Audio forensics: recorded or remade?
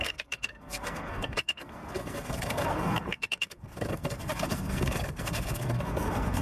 remade